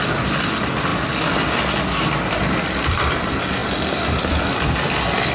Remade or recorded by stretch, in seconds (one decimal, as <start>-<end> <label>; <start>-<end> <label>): 0.0-5.3 recorded